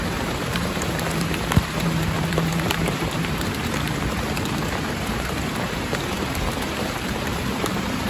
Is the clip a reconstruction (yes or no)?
yes